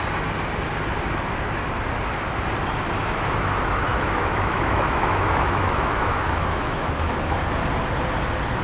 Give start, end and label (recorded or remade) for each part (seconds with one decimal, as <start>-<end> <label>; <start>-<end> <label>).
0.0-3.9 recorded; 3.9-7.4 remade; 7.4-8.6 recorded